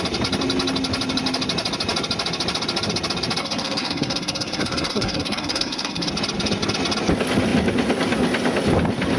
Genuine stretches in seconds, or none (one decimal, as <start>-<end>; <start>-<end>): 0.0-3.4; 6.1-9.2